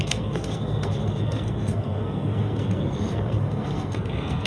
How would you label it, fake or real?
fake